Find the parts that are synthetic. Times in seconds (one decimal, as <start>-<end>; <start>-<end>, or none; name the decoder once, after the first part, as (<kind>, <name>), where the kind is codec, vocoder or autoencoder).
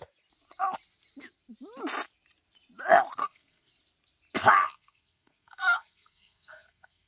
3.2-3.7 (codec, SNAC); 4.6-7.1